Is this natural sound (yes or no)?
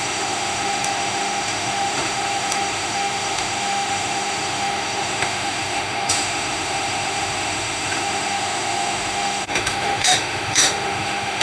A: no